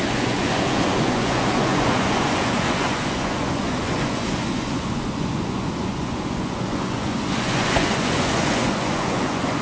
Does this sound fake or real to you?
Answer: fake